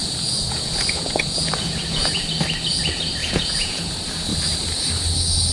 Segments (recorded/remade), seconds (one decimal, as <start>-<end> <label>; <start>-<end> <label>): 0.0-2.2 remade; 2.2-3.2 recorded; 3.2-3.9 remade; 3.9-5.5 recorded